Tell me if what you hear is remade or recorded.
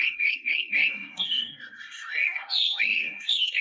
remade